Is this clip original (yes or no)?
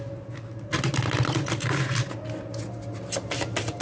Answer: yes